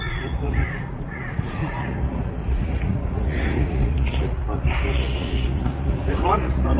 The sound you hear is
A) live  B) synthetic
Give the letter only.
B